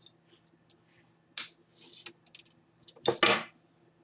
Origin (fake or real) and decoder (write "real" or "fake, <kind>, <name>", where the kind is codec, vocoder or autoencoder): real